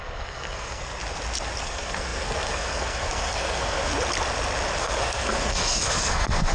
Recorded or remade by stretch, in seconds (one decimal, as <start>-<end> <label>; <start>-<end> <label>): 0.0-1.0 remade; 1.0-1.6 recorded; 1.6-3.9 remade; 3.9-4.8 recorded; 4.8-6.5 remade